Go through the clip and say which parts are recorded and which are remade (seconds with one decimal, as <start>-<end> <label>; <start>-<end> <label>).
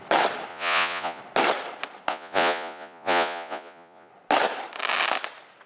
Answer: 0.0-0.5 recorded; 0.5-1.2 remade; 1.2-2.1 recorded; 2.1-4.1 remade; 4.1-5.7 recorded